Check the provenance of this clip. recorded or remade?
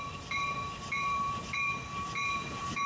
remade